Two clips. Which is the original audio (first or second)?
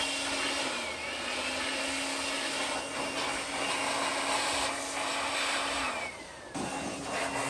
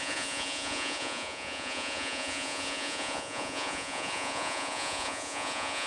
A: first